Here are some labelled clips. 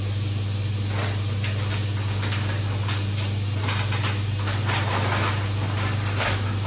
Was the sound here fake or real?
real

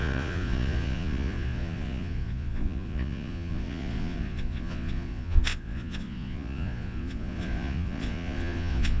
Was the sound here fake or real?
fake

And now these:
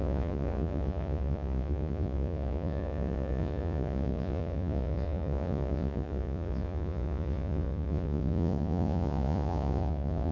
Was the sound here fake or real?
fake